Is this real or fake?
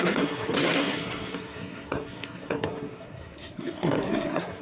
fake